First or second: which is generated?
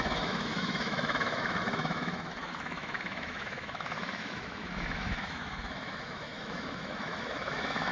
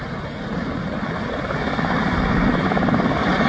first